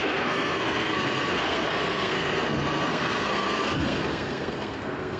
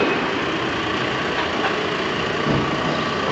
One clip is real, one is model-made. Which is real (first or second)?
second